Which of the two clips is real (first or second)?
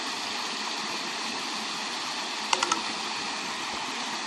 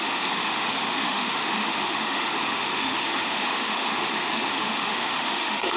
first